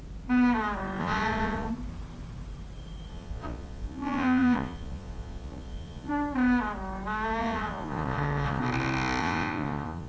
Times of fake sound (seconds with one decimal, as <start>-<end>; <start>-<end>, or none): 1.0-1.7; 3.1-6.1; 7.4-8.6; 9.2-10.1